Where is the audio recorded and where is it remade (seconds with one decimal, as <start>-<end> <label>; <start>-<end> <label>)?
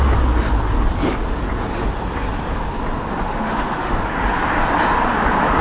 0.0-3.3 recorded; 3.3-4.0 remade; 4.0-5.6 recorded